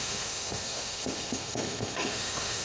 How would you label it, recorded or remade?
remade